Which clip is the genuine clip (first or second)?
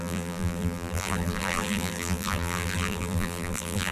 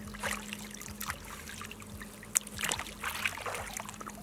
second